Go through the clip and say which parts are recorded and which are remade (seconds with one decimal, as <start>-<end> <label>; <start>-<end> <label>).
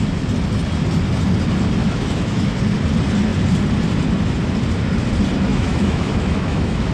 0.0-1.8 recorded; 1.8-2.6 remade; 2.6-5.5 recorded; 5.5-6.9 remade